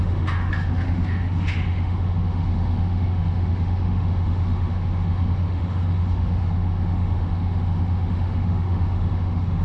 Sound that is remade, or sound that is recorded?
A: remade